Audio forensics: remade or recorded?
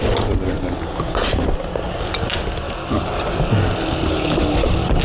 recorded